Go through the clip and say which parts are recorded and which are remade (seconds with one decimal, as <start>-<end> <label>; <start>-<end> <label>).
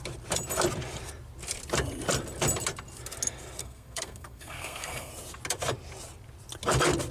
0.0-3.6 recorded; 3.6-5.1 remade; 5.1-7.1 recorded